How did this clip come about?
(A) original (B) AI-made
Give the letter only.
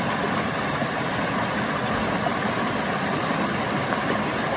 A